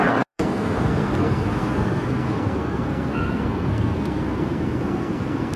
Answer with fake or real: fake